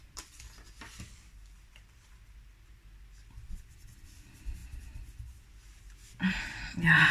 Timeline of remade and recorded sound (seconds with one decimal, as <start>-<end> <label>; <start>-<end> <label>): 0.0-7.1 remade